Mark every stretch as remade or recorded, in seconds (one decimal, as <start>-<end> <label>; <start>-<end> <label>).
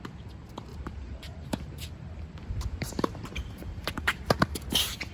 0.0-0.7 recorded; 0.7-1.7 remade; 1.7-2.4 recorded; 2.4-4.3 remade; 4.3-5.1 recorded